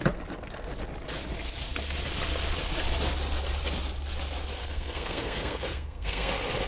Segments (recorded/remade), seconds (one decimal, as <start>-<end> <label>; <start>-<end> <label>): 0.0-4.6 recorded; 4.6-6.3 remade; 6.3-6.7 recorded